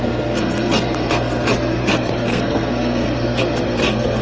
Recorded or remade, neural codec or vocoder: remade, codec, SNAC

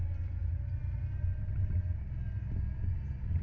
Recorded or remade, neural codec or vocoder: recorded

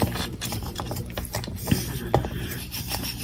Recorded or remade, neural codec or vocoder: remade, vocoder, BigVGAN v2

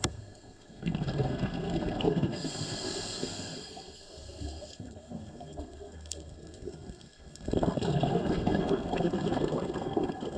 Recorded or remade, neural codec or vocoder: remade, codec, SNAC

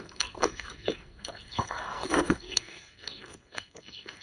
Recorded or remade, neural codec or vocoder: remade, codec, SNAC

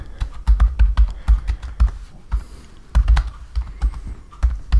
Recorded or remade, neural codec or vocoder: recorded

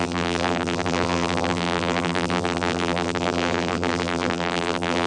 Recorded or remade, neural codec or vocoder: remade, vocoder, BigVGAN v2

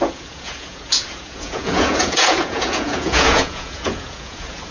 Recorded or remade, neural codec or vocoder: remade, vocoder, Vocos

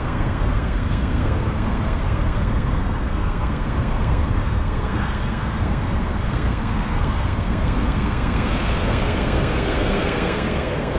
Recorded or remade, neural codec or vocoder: remade, codec, SNAC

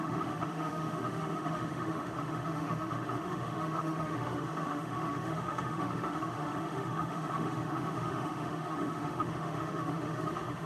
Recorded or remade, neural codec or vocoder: remade, autoencoder, DAC-VAE